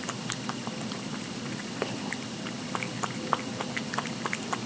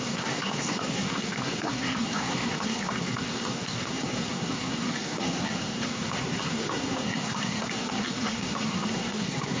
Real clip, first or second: first